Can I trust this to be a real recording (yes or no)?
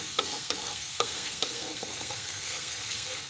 no